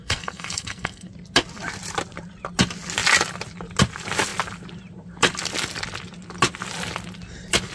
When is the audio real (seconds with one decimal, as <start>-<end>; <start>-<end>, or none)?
1.1-7.7